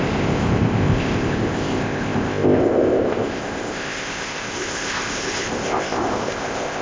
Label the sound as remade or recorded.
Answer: remade